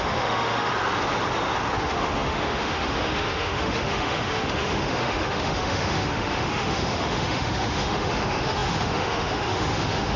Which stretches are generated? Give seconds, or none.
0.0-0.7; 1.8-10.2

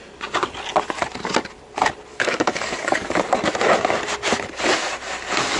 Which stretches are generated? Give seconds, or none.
2.1-3.2

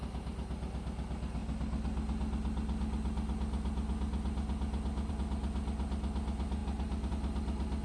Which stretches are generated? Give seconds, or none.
none

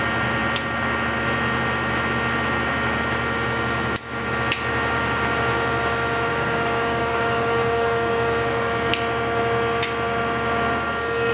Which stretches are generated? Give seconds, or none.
6.3-8.9